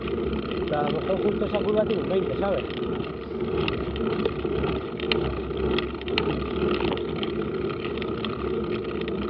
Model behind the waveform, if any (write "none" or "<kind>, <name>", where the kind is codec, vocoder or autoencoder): none